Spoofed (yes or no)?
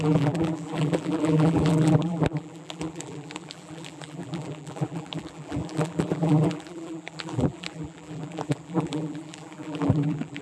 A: yes